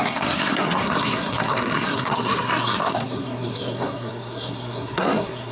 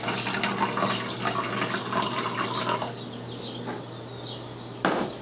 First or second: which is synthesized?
first